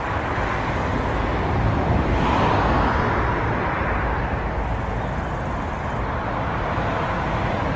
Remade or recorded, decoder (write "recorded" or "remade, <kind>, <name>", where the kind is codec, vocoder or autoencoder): recorded